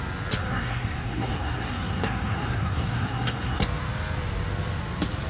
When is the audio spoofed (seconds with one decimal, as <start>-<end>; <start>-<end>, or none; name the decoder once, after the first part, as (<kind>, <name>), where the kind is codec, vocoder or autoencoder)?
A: 0.4-3.6 (codec, SNAC)